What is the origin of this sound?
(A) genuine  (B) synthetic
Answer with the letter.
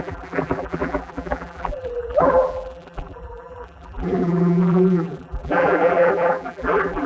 B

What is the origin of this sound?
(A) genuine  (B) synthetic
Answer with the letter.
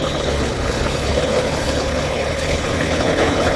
B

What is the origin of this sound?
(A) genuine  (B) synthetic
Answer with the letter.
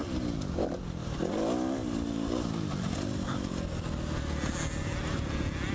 A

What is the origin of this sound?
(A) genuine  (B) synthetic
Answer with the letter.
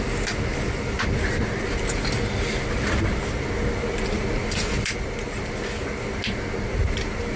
A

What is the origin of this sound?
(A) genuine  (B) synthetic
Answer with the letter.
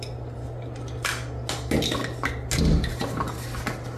A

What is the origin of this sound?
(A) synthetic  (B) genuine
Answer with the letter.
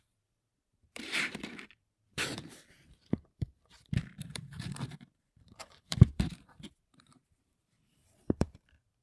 A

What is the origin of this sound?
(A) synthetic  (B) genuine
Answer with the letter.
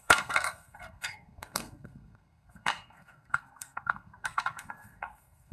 A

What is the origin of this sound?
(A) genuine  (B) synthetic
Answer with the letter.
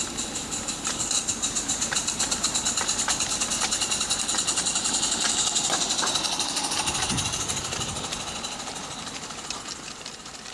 B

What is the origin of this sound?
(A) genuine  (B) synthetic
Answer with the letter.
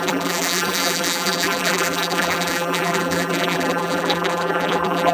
B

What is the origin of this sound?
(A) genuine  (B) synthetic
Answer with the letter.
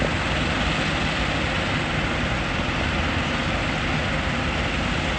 A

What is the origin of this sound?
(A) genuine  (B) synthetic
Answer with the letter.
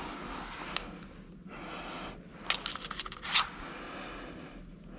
A